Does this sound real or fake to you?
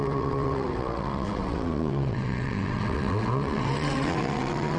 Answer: fake